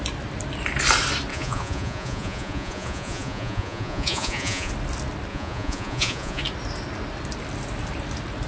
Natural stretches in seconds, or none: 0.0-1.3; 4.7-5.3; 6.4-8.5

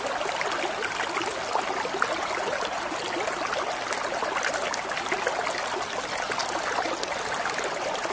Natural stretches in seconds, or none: 0.0-8.1

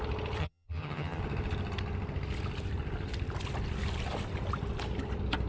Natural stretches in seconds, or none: 0.0-0.4; 1.2-5.5

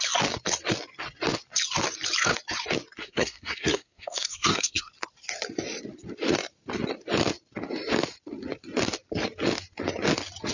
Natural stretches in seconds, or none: 0.0-3.0; 4.9-10.5

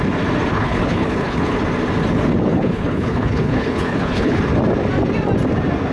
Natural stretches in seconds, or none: 0.0-0.5; 1.6-2.5; 4.4-5.9

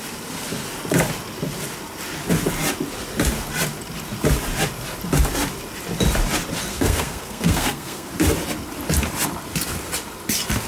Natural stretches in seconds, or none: 0.0-6.7; 8.1-10.7

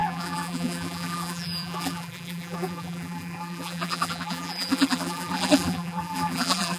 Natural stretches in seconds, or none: none